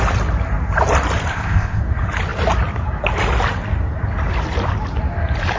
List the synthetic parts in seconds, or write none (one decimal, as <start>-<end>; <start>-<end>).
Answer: 1.3-1.8